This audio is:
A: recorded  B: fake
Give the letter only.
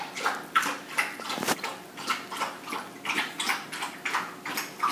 A